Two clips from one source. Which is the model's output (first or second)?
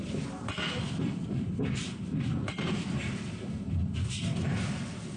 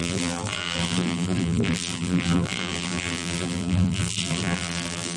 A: second